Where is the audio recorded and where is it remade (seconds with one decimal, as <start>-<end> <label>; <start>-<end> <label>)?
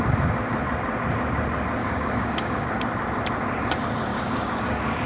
0.0-1.8 recorded; 1.8-2.7 remade; 2.7-4.1 recorded; 4.1-5.1 remade